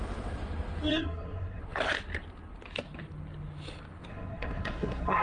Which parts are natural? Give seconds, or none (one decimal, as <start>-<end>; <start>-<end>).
0.0-0.9; 1.6-4.1